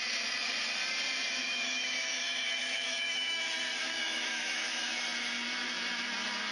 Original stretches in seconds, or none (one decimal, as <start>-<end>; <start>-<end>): 0.0-1.4; 3.4-3.8; 5.0-6.5